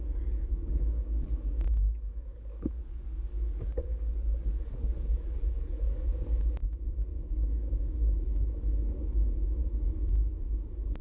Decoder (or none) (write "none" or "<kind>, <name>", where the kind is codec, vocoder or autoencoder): codec, DAC